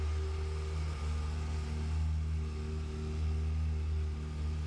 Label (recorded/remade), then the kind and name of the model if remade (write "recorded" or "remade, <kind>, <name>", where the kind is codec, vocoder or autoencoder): recorded